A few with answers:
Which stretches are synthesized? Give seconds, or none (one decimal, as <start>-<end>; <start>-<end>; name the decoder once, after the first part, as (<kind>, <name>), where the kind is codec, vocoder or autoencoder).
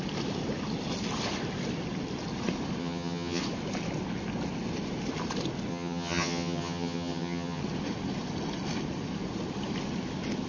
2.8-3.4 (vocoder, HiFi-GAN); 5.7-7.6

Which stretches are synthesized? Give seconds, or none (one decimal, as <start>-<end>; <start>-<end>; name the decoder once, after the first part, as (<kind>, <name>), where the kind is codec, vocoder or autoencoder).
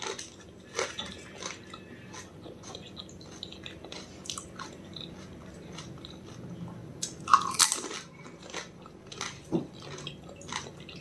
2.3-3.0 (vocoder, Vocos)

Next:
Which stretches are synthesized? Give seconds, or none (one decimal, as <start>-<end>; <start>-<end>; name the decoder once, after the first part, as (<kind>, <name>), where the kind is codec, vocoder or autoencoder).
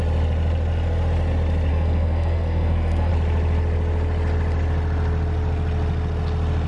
1.7-3.1 (codec, SNAC)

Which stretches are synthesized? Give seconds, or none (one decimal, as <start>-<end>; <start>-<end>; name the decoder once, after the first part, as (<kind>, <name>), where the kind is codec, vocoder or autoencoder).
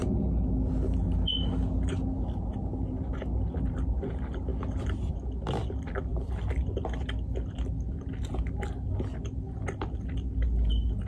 none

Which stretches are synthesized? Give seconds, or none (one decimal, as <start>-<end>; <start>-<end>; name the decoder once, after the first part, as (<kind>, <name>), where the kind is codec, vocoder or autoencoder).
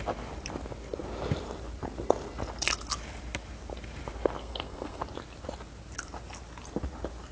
4.4-5.0 (codec, SNAC)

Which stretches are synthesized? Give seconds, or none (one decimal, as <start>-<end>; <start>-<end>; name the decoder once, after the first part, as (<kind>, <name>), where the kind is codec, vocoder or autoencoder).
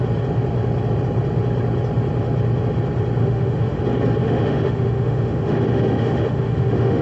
3.2-3.8 (autoencoder, DAC-VAE); 4.2-7.0